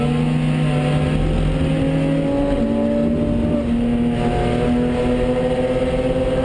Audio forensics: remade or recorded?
recorded